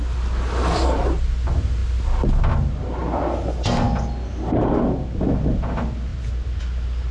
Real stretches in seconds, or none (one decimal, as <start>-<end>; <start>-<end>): 0.0-7.1